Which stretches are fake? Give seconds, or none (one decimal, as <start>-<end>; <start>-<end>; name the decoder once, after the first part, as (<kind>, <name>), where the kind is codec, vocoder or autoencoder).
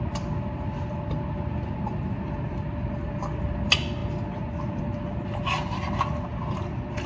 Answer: none